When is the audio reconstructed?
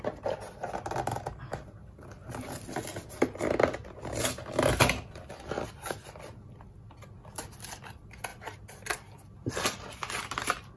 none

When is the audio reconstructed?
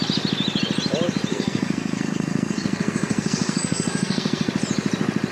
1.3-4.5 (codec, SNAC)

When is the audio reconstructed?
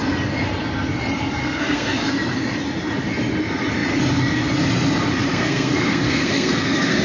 1.4-2.1 (codec, SNAC); 5.3-7.0